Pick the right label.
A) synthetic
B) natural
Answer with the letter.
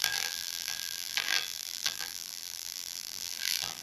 A